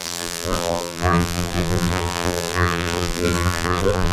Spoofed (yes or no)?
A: yes